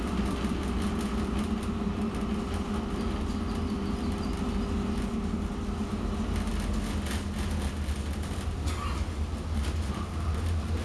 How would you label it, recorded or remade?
recorded